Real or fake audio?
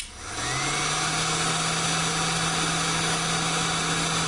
real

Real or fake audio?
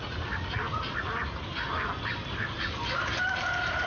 real